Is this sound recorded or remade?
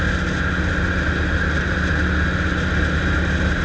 recorded